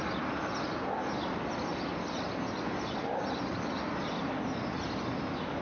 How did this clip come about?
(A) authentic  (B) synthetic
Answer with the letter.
A